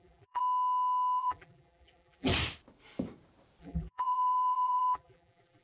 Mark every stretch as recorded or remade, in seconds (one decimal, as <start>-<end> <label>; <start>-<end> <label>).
0.0-0.4 remade; 0.4-1.2 recorded; 1.2-2.3 remade; 2.3-3.6 recorded; 3.6-5.6 remade